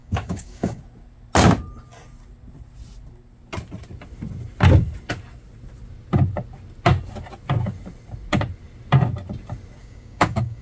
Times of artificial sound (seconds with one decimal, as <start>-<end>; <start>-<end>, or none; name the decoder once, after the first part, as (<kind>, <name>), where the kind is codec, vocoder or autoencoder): 0.0-0.8 (codec, DAC); 9.8-10.6